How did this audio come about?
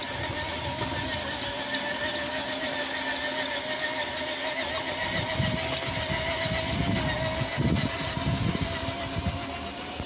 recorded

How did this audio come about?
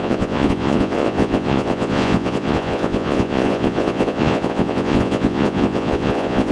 remade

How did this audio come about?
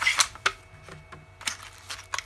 recorded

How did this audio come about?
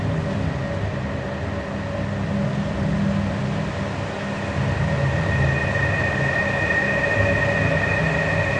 recorded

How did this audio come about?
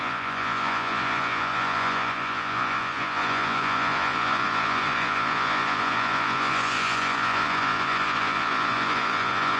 remade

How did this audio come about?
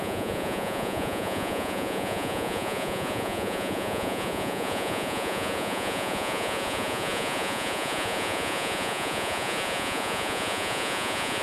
remade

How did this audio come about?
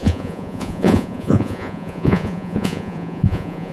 remade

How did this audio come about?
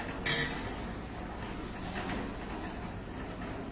recorded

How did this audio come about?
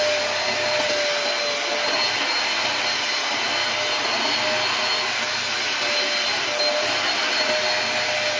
recorded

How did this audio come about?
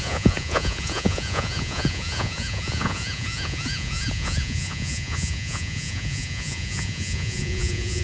remade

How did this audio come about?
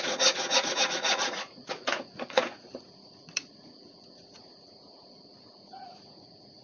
remade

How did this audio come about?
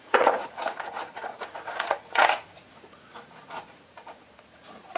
remade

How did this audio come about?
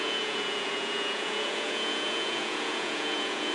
remade